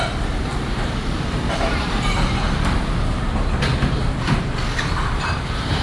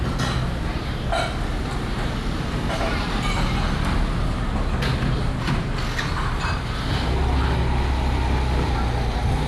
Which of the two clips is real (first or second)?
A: second